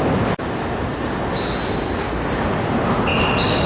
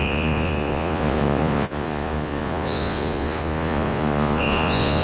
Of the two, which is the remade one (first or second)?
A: second